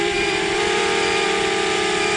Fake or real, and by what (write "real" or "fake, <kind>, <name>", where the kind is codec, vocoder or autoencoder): fake, vocoder, BigVGAN v2